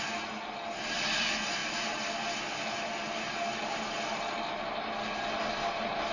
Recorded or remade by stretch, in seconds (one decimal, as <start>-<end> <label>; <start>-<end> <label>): 0.0-6.1 recorded